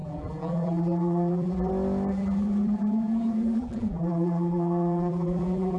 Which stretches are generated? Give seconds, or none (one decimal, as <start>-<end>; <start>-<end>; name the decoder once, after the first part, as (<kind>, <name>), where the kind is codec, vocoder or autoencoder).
0.0-1.7 (vocoder, BigVGAN v2); 2.1-5.8